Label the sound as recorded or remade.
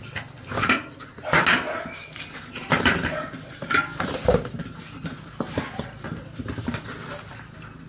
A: recorded